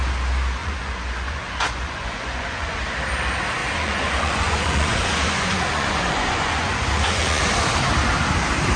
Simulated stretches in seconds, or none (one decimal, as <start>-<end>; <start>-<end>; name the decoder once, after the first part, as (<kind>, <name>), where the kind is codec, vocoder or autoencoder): 0.6-2.8 (vocoder, Vocos); 3.6-7.4